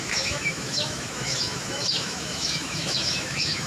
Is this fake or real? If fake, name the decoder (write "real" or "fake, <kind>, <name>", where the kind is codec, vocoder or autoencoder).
fake, autoencoder, DAC-VAE